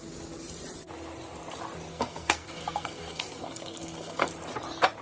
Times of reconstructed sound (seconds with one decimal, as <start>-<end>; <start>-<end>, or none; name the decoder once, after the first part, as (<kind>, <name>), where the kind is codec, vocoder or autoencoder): 1.9-4.3 (codec, SNAC)